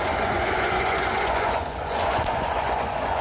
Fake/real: fake